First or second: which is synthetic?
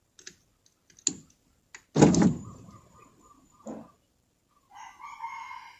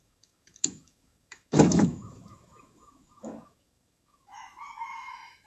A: second